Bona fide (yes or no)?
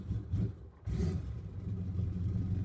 yes